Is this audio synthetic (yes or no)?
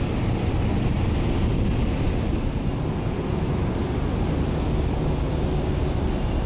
no